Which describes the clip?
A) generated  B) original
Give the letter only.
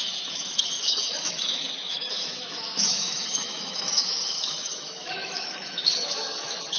A